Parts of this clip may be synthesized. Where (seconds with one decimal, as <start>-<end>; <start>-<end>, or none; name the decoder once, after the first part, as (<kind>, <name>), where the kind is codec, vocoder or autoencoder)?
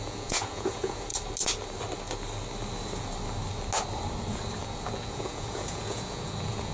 0.0-1.1 (vocoder, Vocos); 5.1-6.7